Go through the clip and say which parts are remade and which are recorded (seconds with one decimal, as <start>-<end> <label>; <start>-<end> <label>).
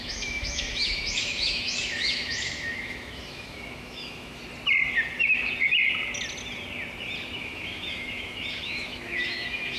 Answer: 0.0-4.4 remade; 4.4-7.4 recorded; 7.4-9.8 remade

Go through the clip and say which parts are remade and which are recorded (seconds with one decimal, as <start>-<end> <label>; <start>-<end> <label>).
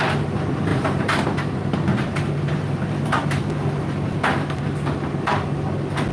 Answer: 0.0-0.7 recorded; 0.7-3.5 remade; 3.5-6.1 recorded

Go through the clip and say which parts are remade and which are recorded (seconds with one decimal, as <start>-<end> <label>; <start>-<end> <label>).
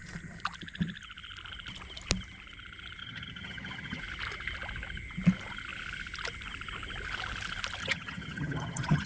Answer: 0.0-3.0 recorded; 3.0-4.0 remade; 4.0-7.8 recorded; 7.8-9.1 remade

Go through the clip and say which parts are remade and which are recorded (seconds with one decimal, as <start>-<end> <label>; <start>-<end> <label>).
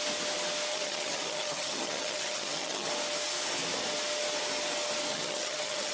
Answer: 0.0-0.7 recorded; 0.7-2.9 remade; 2.9-5.1 recorded; 5.1-5.9 remade